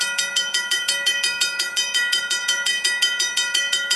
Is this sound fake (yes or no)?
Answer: yes